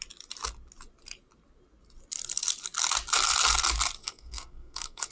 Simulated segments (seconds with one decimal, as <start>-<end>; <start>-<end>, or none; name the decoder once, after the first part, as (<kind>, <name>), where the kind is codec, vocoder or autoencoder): 4.0-5.1 (codec, SNAC)